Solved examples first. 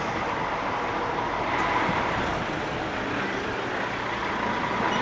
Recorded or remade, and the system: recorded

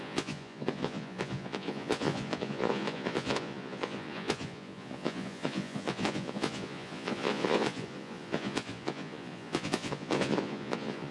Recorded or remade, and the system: remade, vocoder, Vocos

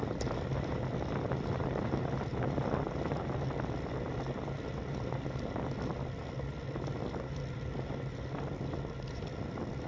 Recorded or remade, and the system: recorded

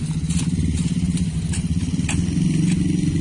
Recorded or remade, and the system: recorded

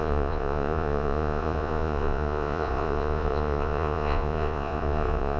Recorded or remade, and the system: remade, vocoder, Vocos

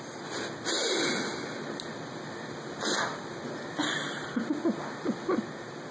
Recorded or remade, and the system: recorded